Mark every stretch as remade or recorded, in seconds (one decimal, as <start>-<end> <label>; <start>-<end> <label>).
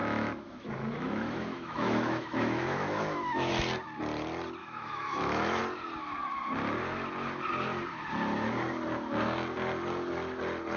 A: 0.0-3.5 remade; 3.5-4.6 recorded; 4.6-5.6 remade; 5.6-10.8 recorded